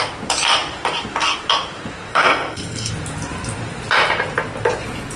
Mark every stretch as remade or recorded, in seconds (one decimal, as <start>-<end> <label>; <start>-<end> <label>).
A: 0.0-2.1 recorded; 2.1-2.9 remade; 2.9-5.2 recorded